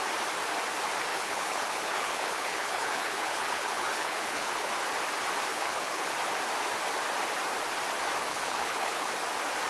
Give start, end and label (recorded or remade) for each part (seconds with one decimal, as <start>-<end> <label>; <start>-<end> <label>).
0.0-1.1 recorded; 1.1-4.7 remade; 4.7-5.5 recorded; 5.5-6.1 remade; 6.1-8.3 recorded; 8.3-9.1 remade; 9.1-9.7 recorded